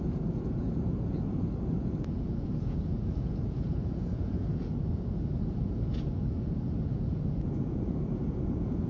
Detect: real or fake fake